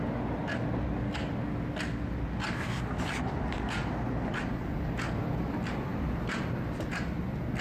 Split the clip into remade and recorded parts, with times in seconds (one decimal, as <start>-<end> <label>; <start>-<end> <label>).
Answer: 0.0-7.6 recorded